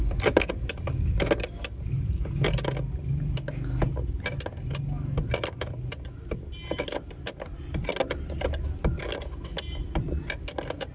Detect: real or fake real